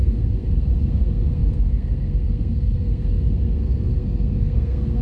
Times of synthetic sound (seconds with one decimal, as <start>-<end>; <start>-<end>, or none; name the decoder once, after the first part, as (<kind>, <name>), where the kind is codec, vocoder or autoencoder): 0.0-5.0 (codec, SNAC)